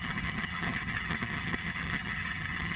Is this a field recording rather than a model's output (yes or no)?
no